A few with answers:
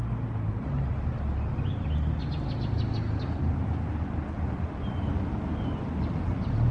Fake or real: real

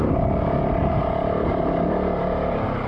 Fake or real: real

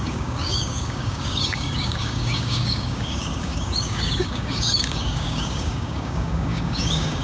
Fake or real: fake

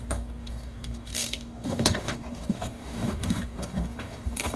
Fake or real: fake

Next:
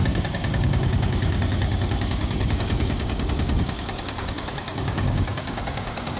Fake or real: fake